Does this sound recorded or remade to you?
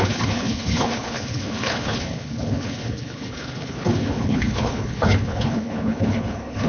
remade